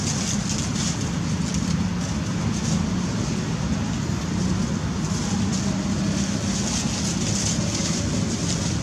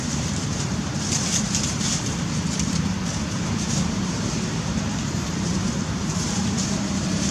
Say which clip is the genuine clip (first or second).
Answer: first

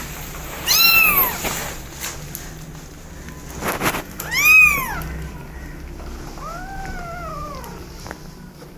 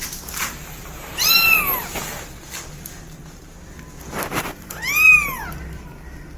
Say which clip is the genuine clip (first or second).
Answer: first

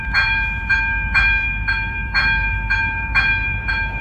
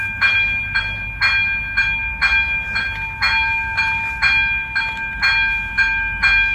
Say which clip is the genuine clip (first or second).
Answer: second